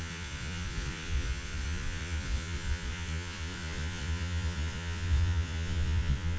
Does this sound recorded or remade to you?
remade